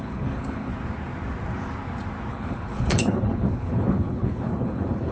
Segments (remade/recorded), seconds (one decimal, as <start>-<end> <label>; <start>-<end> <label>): 0.0-0.7 remade; 0.7-2.3 recorded; 2.3-5.1 remade